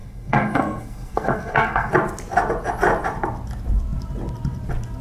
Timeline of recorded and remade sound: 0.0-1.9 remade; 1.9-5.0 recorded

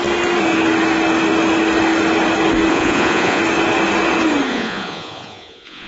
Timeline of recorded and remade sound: 0.0-2.7 recorded; 2.7-3.4 remade; 3.4-4.5 recorded; 4.5-5.9 remade

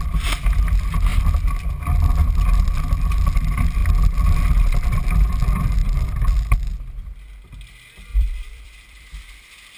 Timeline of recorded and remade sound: 0.0-1.1 recorded; 1.1-1.7 remade; 1.7-5.8 recorded; 5.8-6.7 remade; 6.7-8.1 recorded; 8.1-9.1 remade; 9.1-9.8 recorded

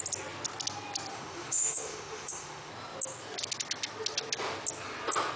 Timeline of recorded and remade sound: 0.0-1.1 recorded; 1.1-2.7 remade; 2.7-5.4 recorded

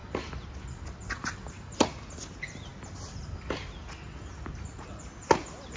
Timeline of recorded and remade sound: 0.0-5.8 recorded

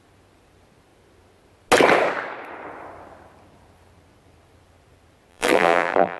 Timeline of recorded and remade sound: 0.0-5.3 recorded; 5.3-6.2 remade

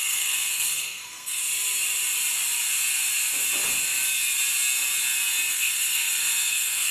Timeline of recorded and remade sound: 0.0-1.4 remade; 1.4-5.5 recorded; 5.5-6.9 remade

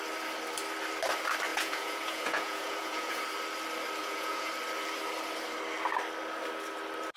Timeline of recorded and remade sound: 0.0-1.5 recorded; 1.5-3.2 remade; 3.2-4.0 recorded; 4.0-4.5 remade; 4.5-7.2 recorded